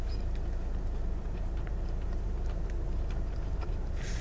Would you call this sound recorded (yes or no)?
no